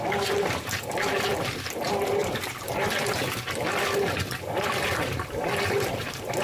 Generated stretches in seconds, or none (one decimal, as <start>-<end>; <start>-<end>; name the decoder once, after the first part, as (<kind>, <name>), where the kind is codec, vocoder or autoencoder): 0.0-6.4 (vocoder, BigVGAN v2)